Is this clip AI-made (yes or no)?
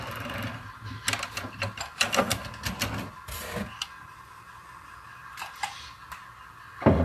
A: no